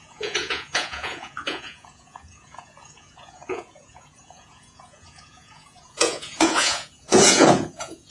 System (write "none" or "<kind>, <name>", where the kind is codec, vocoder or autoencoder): vocoder, Vocos